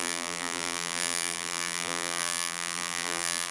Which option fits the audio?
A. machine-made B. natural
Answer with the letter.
A